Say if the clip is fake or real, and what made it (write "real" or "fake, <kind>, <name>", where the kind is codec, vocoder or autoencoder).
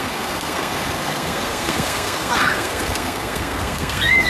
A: fake, codec, SNAC